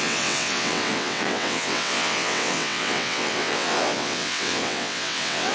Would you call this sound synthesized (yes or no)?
yes